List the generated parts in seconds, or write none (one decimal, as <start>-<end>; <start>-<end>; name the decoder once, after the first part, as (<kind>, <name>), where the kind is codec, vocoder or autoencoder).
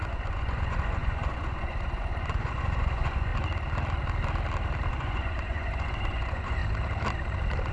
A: 0.0-3.3 (vocoder, Vocos); 4.9-6.6